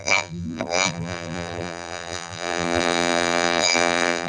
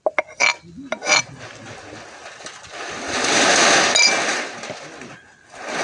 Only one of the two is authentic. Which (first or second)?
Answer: second